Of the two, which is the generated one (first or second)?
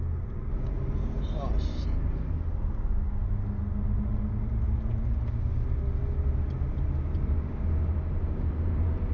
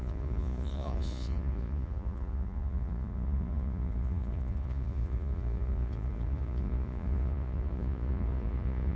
second